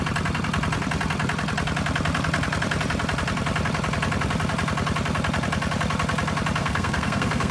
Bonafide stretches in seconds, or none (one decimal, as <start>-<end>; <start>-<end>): 0.0-6.6